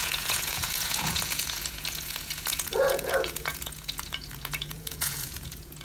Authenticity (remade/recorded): remade